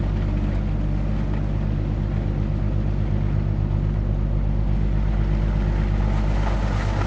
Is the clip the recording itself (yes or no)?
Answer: yes